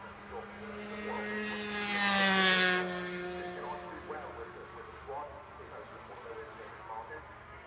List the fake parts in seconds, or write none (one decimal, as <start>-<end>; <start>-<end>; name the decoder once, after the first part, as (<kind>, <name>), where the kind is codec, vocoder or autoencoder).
none